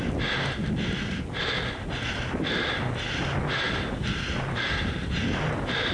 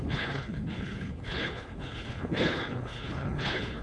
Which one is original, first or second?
first